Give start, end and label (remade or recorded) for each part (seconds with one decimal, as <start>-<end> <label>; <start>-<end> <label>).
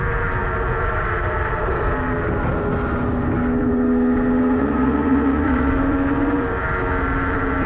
0.0-4.6 recorded; 4.6-5.7 remade; 5.7-7.7 recorded